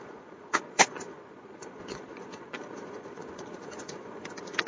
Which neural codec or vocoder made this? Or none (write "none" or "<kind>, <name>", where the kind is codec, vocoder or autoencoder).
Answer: vocoder, Vocos